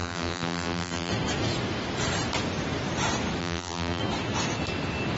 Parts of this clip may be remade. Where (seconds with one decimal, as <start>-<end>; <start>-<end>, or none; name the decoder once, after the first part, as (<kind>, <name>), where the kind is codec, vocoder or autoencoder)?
0.0-1.1 (vocoder, BigVGAN v2); 3.4-4.0